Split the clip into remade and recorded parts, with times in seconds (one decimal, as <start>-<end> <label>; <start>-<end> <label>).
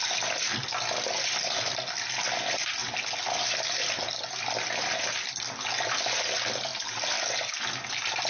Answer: 0.0-8.3 recorded